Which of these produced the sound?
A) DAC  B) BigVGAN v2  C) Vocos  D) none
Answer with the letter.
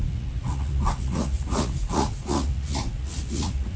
C